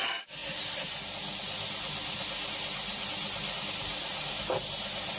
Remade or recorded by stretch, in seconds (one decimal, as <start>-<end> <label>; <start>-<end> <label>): 0.0-5.2 recorded

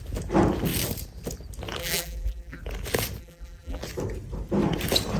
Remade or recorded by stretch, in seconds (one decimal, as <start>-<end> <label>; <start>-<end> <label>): 0.0-1.8 recorded; 1.8-2.6 remade; 2.6-3.2 recorded; 3.2-3.8 remade; 3.8-5.2 recorded

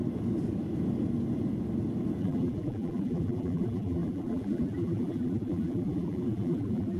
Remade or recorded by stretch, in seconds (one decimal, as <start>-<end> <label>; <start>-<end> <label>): 0.0-2.2 recorded; 2.2-7.0 remade

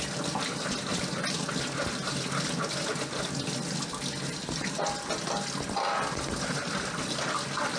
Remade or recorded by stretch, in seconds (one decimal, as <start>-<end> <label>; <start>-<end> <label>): 0.0-7.8 recorded